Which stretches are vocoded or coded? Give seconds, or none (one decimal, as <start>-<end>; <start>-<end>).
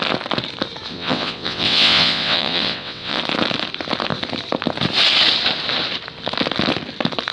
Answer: 0.9-3.2